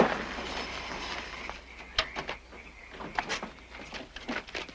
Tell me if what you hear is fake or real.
real